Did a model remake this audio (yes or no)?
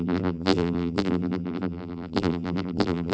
yes